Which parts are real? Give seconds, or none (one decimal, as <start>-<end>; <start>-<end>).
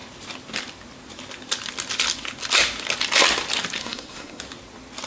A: 0.0-3.8; 4.4-5.1